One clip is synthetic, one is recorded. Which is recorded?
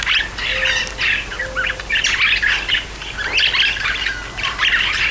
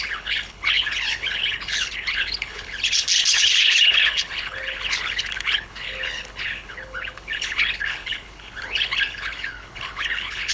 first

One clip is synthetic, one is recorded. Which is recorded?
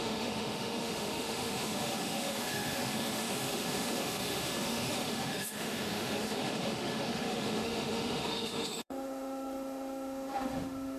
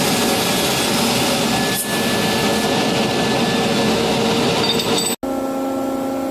second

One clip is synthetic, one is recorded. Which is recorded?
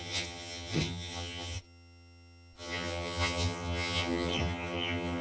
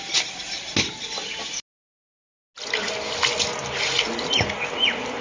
second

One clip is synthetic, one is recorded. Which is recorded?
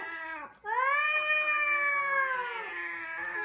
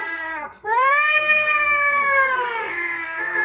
first